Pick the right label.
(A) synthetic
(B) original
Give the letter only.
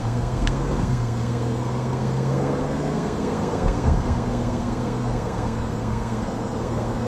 A